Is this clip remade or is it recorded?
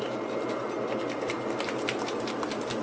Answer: recorded